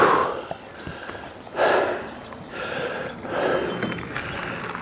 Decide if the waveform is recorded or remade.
recorded